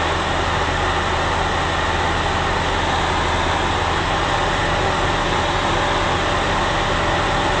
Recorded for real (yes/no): yes